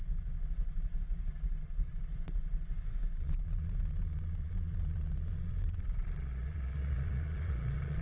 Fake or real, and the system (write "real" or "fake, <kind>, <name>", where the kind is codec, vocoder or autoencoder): fake, vocoder, Vocos